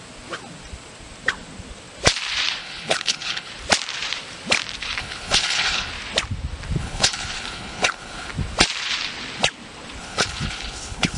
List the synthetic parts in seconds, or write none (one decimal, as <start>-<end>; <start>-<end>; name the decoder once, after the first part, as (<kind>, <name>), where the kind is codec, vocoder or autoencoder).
2.6-3.5 (codec, HILCodec); 5.0-5.9; 6.8-8.3; 10.0-11.2